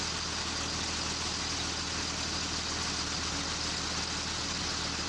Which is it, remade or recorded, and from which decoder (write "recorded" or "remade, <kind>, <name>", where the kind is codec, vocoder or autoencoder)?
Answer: recorded